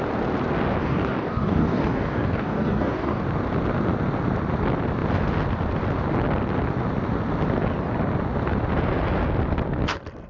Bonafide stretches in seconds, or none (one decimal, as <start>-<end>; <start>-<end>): 0.0-0.8; 3.2-10.3